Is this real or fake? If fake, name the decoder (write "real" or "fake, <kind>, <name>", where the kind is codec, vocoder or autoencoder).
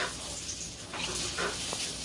real